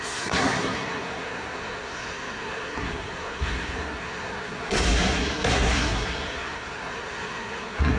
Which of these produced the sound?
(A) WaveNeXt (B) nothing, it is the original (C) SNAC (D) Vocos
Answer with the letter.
C